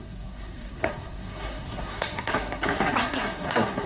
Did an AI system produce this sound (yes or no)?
yes